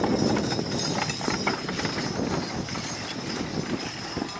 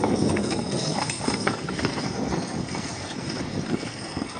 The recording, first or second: first